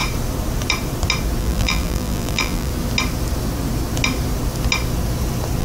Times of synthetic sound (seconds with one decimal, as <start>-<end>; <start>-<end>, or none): 1.4-2.7